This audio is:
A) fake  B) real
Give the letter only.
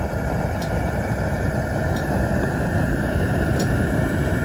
B